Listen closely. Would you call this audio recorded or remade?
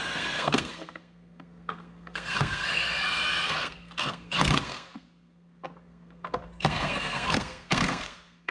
remade